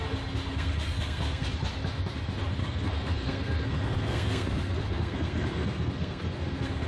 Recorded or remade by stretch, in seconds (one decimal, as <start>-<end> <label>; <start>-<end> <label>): 0.0-0.5 recorded; 0.5-1.5 remade; 1.5-2.6 recorded; 2.6-6.9 remade